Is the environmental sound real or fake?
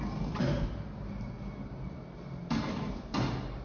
real